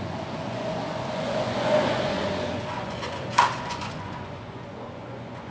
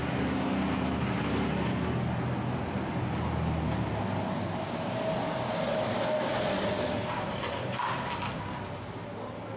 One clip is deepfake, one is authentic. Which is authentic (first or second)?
second